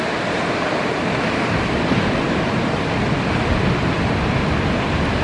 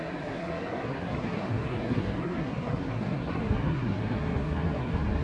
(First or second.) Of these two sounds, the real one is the first